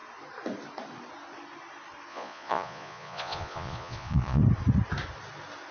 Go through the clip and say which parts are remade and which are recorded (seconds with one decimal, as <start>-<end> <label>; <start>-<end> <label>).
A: 0.0-2.1 recorded; 2.1-4.4 remade; 4.4-5.7 recorded